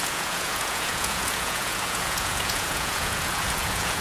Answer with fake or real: fake